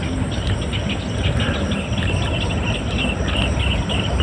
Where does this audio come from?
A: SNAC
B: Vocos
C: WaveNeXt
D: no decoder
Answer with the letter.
D